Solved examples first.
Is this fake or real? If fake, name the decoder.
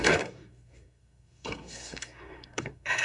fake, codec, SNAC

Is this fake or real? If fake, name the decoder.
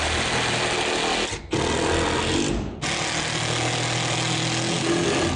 real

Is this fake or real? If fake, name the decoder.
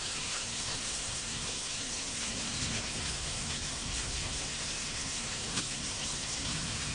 fake, codec, SNAC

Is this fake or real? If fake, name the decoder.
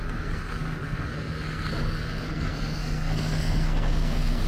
fake, codec, SNAC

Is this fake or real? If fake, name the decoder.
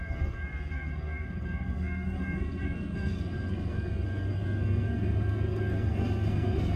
fake, codec, SNAC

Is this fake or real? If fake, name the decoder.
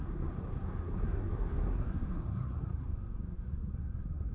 fake, codec, SNAC